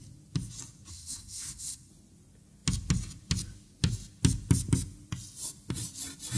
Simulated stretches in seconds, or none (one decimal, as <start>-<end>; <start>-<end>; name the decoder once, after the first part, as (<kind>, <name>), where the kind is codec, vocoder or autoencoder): 0.9-1.9 (codec, SNAC)

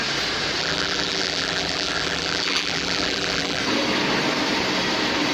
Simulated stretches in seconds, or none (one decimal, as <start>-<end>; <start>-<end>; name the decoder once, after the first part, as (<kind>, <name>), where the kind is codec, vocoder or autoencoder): 0.6-3.6 (vocoder, BigVGAN v2)

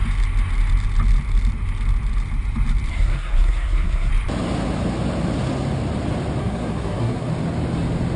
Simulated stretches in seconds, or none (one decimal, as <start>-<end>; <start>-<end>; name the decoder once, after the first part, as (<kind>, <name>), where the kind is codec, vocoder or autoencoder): 2.9-4.1 (codec, SNAC); 6.4-7.3

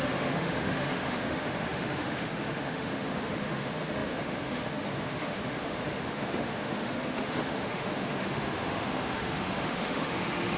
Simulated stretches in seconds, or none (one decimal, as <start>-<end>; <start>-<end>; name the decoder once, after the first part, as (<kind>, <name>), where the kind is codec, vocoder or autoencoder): 0.0-10.6 (autoencoder, DAC-VAE)

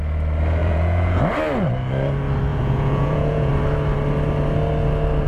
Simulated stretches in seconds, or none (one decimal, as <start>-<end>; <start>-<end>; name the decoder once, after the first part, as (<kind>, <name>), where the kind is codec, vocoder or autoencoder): 0.6-1.2 (vocoder, Vocos); 2.5-3.5

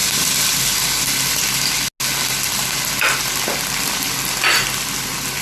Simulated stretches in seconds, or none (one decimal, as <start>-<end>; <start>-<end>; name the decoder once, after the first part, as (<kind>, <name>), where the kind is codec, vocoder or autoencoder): none

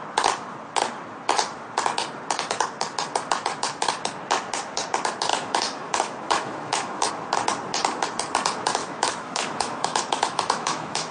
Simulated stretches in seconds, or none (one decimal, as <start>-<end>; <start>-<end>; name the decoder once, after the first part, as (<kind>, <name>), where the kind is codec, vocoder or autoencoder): 5.3-7.1 (autoencoder, DAC-VAE); 8.8-11.1

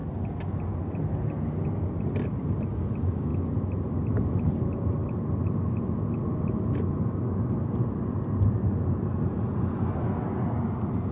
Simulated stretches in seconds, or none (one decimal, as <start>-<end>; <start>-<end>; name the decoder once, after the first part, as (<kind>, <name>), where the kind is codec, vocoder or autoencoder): none